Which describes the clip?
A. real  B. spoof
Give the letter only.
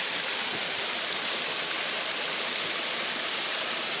B